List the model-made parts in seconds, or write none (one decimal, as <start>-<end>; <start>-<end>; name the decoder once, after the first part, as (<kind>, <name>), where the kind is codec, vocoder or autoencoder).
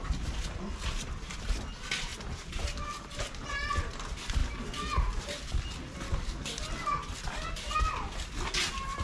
2.1-2.8 (vocoder, BigVGAN v2)